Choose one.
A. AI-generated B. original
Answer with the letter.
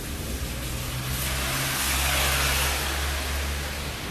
B